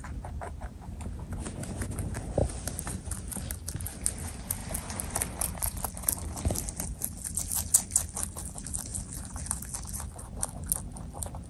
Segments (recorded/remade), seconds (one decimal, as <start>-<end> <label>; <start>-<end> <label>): 0.0-11.5 recorded